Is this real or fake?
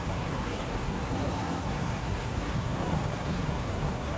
fake